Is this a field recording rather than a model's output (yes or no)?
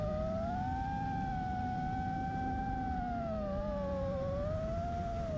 yes